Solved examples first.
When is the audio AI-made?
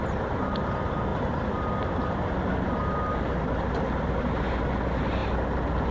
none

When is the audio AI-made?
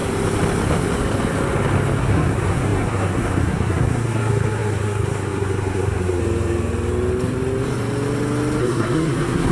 2.0-6.2; 8.6-9.5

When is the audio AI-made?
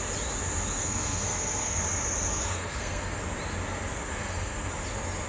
0.8-1.8; 2.3-3.2; 4.1-4.7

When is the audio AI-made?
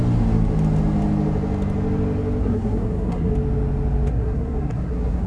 2.4-3.3; 4.1-5.3